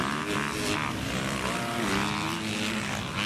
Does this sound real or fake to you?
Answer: real